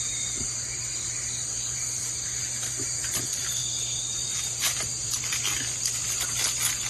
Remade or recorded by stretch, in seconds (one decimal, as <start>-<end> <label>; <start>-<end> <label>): 0.0-6.9 recorded